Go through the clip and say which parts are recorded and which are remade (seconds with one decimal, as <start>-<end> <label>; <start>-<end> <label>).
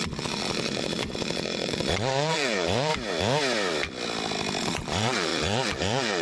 0.0-2.9 remade; 2.9-4.6 recorded; 4.6-6.2 remade